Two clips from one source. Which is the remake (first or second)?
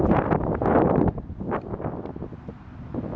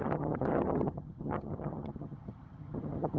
second